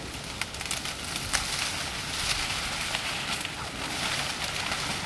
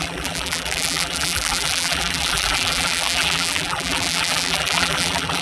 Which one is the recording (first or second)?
first